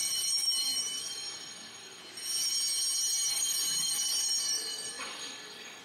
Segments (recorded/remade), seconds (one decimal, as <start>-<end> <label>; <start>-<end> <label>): 0.0-2.0 remade; 2.0-3.3 recorded; 3.3-5.8 remade